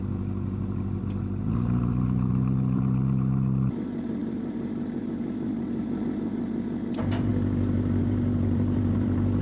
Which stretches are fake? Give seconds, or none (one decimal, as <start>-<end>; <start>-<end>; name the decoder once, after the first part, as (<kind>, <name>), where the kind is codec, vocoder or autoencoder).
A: 0.0-7.3 (vocoder, BigVGAN v2); 8.0-9.4